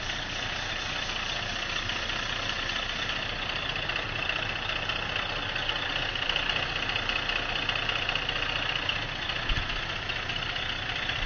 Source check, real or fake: real